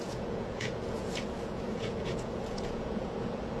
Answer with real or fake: fake